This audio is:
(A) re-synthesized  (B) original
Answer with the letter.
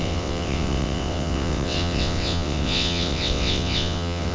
A